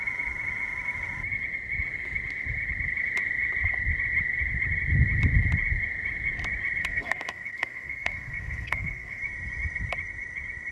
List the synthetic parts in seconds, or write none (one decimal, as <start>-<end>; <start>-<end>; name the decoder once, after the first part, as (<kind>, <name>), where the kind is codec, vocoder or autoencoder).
6.8-9.2 (codec, SNAC)